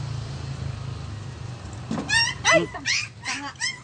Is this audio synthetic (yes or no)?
no